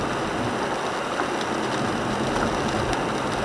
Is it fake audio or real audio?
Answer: real